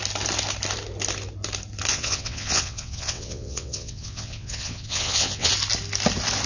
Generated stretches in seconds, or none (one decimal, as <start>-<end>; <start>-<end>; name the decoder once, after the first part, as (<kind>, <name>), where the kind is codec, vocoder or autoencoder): 1.9-5.5 (vocoder, WaveNeXt)